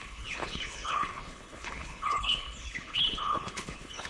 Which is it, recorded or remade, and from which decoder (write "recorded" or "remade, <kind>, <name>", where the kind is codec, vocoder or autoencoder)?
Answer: remade, codec, HILCodec